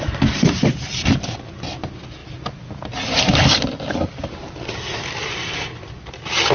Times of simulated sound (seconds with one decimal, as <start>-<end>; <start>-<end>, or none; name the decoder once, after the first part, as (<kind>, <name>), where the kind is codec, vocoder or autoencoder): none